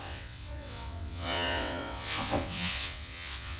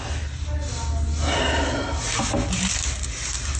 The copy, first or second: first